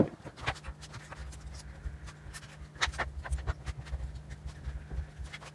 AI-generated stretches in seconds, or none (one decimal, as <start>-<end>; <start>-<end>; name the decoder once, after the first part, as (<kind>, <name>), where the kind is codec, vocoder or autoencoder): none